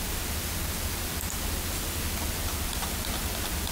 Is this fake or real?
real